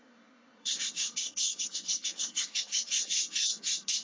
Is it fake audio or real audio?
fake